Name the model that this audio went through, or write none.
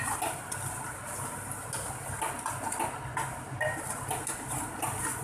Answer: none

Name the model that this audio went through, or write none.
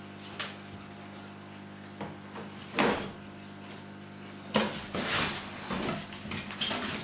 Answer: none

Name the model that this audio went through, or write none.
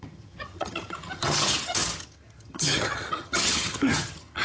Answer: vocoder, HiFi-GAN